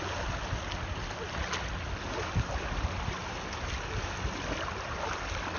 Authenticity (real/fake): real